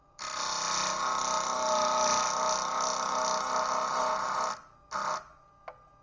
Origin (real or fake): real